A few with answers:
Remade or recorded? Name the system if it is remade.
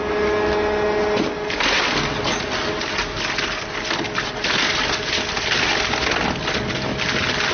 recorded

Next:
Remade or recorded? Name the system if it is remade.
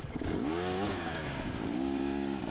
remade, codec, DAC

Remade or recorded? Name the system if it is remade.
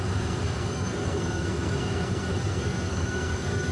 remade, codec, SNAC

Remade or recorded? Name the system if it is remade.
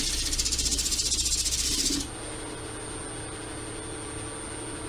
recorded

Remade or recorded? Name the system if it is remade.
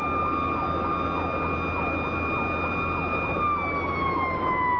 recorded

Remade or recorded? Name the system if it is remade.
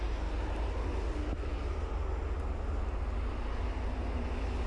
recorded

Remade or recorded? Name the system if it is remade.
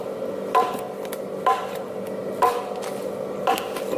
recorded